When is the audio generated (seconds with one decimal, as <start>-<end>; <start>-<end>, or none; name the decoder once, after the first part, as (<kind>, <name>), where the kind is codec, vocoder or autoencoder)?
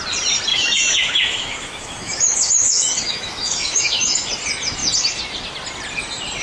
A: 0.5-4.3 (autoencoder, DAC-VAE)